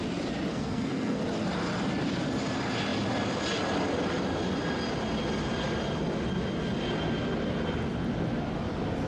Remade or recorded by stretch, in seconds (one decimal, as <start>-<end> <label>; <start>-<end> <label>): 0.0-0.5 recorded; 0.5-1.2 remade; 1.2-9.1 recorded

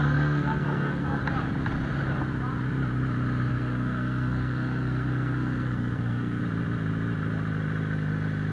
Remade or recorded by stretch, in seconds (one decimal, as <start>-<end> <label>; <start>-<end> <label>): 0.0-1.2 remade; 1.2-3.5 recorded; 3.5-6.4 remade; 6.4-8.5 recorded

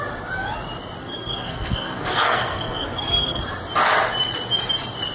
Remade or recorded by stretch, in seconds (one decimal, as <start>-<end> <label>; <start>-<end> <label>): 0.0-1.0 recorded; 1.0-3.4 remade; 3.4-5.1 recorded

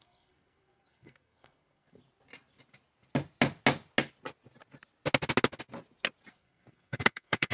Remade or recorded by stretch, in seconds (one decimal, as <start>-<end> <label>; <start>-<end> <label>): 0.0-2.0 remade; 2.0-6.3 recorded; 6.3-7.5 remade